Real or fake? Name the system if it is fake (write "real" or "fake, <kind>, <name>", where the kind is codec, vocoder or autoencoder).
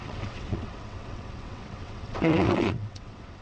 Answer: fake, vocoder, WaveNeXt